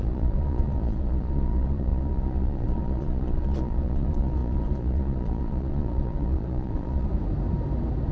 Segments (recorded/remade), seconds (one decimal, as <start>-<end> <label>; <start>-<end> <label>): 0.0-7.1 remade; 7.1-8.1 recorded